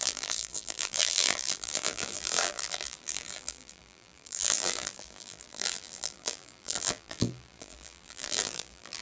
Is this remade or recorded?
remade